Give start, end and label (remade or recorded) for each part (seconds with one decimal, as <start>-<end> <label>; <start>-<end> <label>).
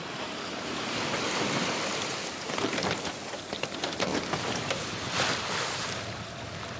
0.0-6.8 remade